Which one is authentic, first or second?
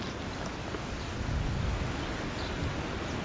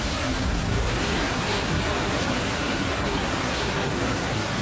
first